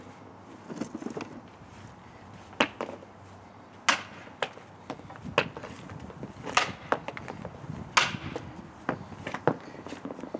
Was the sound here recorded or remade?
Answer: recorded